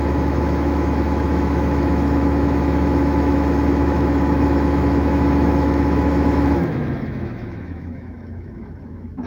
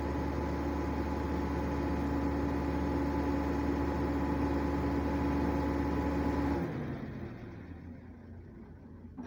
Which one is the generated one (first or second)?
first